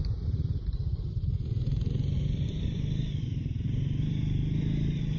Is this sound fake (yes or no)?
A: yes